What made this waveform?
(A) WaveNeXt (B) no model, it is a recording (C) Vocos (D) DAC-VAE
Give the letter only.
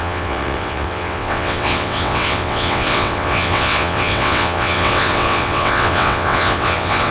A